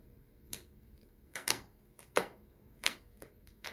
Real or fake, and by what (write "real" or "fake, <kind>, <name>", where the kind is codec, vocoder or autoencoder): fake, codec, SNAC